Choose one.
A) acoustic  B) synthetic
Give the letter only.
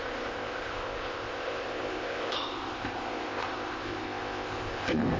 B